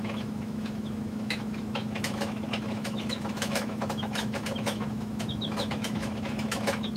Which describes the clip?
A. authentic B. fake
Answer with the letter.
B